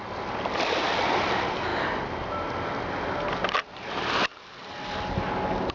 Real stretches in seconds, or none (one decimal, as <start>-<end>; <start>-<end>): 0.0-5.7